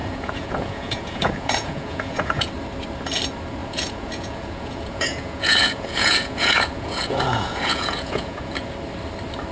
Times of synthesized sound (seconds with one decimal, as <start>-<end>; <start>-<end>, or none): 0.0-2.5; 3.6-8.7